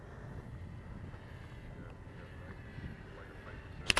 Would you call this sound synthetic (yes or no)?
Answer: no